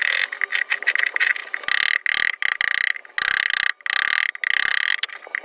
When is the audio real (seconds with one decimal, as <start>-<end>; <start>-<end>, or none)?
0.0-5.4